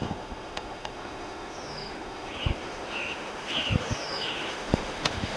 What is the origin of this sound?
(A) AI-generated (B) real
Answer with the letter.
A